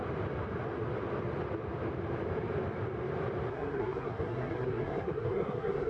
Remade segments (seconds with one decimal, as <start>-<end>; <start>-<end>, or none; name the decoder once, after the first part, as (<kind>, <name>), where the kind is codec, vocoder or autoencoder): 3.5-5.9 (codec, SNAC)